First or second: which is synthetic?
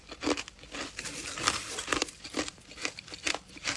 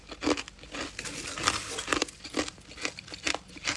first